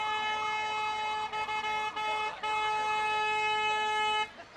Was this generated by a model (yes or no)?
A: no